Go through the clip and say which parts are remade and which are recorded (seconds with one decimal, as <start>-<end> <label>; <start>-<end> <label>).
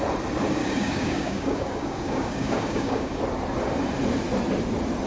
0.0-0.6 recorded; 0.6-3.2 remade; 3.2-5.1 recorded